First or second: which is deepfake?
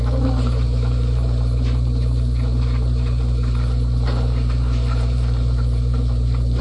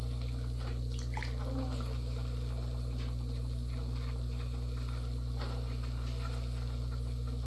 first